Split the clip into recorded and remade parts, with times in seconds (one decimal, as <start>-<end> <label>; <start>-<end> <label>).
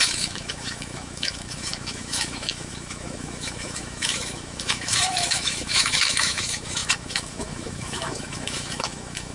0.0-9.3 remade